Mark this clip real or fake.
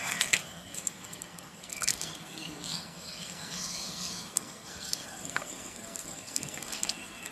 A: fake